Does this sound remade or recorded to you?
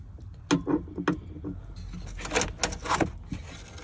recorded